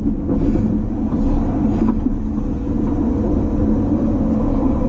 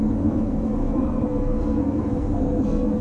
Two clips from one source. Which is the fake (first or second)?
second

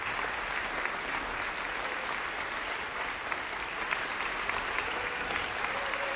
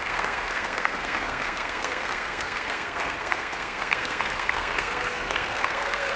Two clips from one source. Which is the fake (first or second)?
second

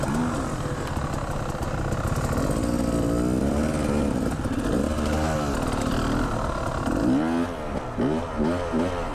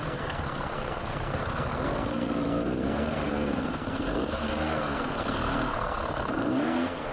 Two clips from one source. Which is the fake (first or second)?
second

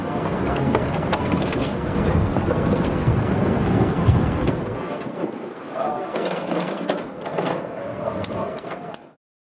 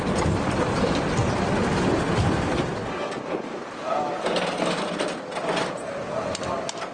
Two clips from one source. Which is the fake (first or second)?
first